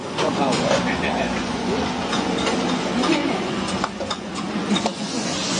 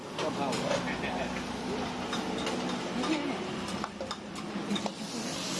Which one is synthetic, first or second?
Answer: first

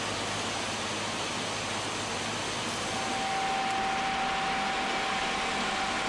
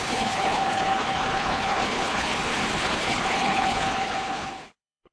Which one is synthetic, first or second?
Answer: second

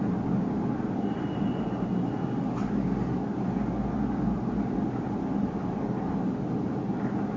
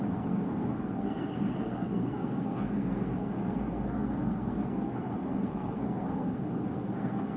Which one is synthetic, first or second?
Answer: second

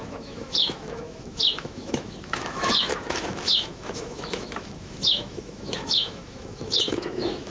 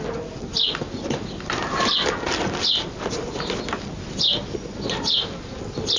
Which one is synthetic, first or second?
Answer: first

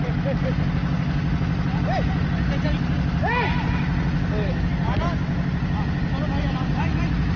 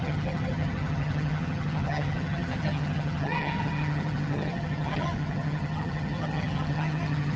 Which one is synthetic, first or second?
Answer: second